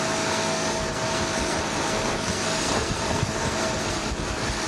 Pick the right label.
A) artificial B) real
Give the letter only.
A